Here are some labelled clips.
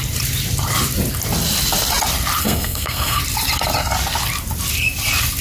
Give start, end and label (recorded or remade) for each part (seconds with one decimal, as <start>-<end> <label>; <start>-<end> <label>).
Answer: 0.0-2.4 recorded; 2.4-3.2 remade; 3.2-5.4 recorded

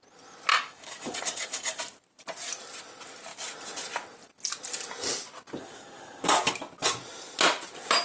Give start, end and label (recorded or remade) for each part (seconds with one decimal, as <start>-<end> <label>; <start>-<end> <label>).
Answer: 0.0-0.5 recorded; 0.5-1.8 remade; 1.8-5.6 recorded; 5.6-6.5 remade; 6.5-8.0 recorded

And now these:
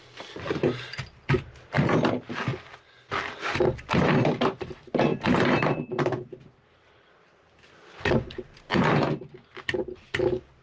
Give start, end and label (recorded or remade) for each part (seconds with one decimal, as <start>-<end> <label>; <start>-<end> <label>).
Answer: 0.0-10.6 recorded

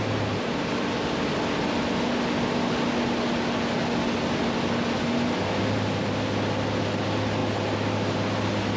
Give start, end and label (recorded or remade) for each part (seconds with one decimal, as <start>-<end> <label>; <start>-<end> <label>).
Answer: 0.0-8.8 recorded

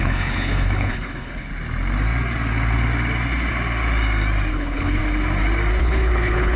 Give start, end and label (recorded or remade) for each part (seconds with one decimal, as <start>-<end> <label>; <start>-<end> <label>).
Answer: 0.0-1.5 remade; 1.5-4.5 recorded; 4.5-5.0 remade; 5.0-5.8 recorded; 5.8-6.6 remade

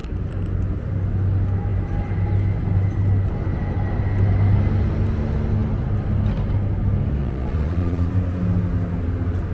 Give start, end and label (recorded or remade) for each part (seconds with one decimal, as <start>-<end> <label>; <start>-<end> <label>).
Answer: 0.0-7.2 recorded; 7.2-8.1 remade; 8.1-9.5 recorded